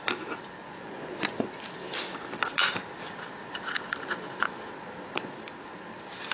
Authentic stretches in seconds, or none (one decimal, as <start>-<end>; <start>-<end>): 0.0-0.6; 1.6-6.3